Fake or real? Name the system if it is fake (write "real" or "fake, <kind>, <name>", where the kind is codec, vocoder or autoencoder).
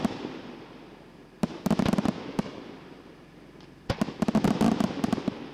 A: real